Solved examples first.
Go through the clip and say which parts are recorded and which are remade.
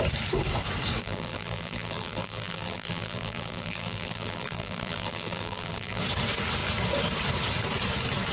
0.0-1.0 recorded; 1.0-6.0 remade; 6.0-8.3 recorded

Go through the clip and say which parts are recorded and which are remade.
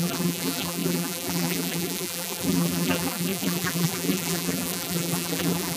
0.0-5.8 remade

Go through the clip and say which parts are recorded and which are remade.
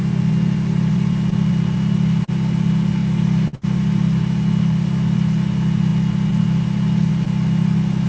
0.0-8.1 recorded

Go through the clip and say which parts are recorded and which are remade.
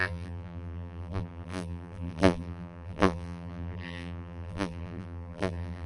0.0-5.9 remade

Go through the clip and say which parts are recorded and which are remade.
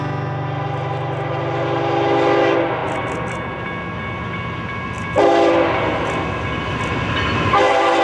0.0-8.0 recorded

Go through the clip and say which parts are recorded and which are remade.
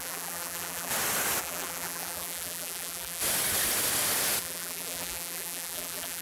0.0-0.9 remade; 0.9-1.4 recorded; 1.4-3.2 remade; 3.2-4.4 recorded; 4.4-6.2 remade